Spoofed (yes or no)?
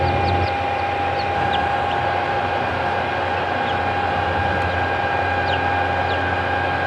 no